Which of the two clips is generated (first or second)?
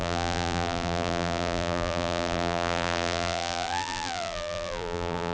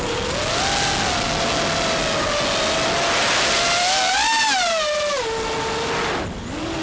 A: first